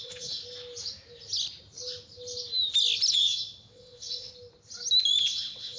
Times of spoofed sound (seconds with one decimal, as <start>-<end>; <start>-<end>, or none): 0.0-0.4; 3.1-4.3; 5.2-5.8